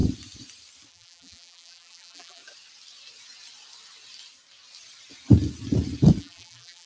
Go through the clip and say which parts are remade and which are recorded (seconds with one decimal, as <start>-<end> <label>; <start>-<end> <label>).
0.0-0.9 recorded; 0.9-2.4 remade; 2.4-6.2 recorded; 6.2-6.9 remade